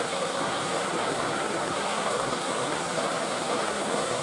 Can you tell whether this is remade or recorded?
remade